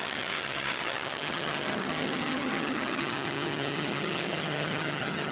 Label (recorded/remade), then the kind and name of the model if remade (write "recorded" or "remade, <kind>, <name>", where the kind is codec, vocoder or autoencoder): remade, vocoder, HiFi-GAN